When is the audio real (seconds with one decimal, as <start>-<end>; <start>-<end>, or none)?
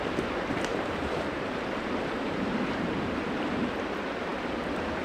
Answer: 0.0-0.7; 3.7-5.0